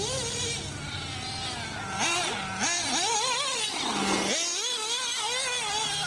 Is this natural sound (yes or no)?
yes